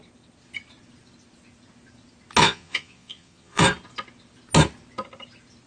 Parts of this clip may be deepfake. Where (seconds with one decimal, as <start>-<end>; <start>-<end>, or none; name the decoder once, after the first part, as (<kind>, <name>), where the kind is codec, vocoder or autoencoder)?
2.4-3.6 (vocoder, Vocos)